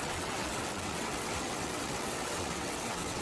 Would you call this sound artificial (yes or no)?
yes